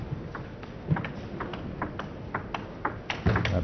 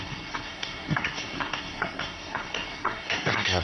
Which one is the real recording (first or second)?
first